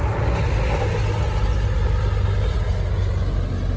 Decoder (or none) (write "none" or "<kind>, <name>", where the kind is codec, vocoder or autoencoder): none